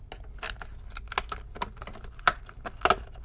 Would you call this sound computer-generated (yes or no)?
no